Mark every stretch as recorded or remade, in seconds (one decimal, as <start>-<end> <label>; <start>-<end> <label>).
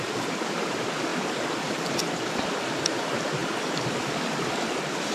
0.0-5.1 remade